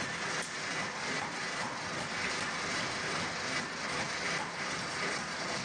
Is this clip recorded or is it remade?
recorded